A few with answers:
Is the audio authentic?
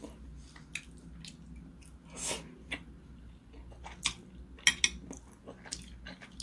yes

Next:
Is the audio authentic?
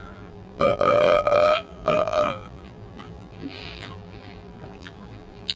no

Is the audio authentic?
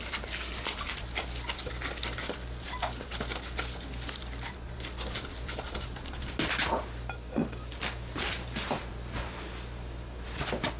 yes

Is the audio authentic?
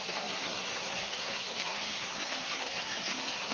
no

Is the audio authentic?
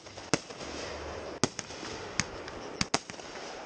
yes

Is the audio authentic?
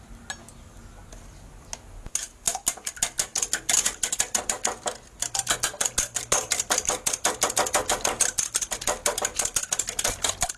yes